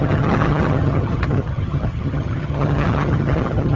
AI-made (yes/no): yes